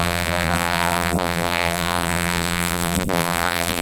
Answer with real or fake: fake